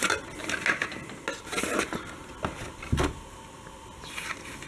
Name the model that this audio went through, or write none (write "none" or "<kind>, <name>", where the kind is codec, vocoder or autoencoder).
none